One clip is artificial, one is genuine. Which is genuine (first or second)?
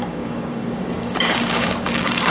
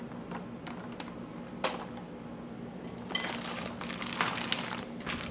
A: second